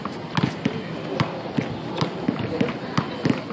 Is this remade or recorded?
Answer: recorded